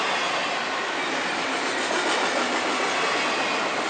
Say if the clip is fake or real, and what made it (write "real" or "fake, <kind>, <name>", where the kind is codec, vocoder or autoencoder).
real